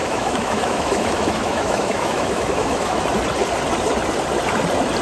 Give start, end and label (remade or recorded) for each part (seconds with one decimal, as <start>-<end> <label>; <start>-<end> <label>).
0.0-3.0 remade; 3.0-5.0 recorded